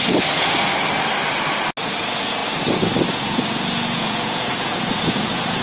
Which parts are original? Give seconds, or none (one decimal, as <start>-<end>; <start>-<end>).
0.0-2.0; 2.4-3.1